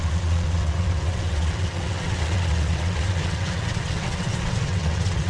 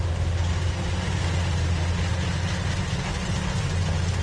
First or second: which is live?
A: second